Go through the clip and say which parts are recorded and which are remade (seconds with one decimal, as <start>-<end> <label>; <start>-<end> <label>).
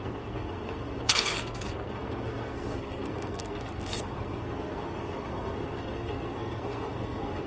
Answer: 0.0-7.5 remade